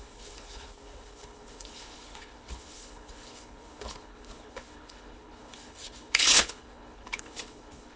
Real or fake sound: fake